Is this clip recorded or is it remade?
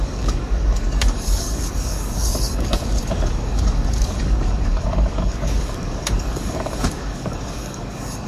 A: remade